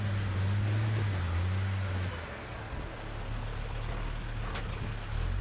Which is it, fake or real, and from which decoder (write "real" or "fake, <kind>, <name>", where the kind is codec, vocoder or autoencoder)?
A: real